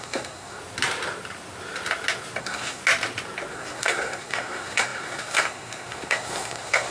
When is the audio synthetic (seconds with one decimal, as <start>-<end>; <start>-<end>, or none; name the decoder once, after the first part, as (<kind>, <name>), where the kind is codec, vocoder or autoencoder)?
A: 0.0-0.6 (codec, SNAC); 2.4-2.8; 3.5-6.9